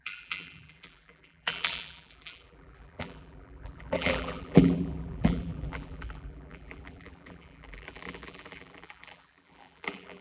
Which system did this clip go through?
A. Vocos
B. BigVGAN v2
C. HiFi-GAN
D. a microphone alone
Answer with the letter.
B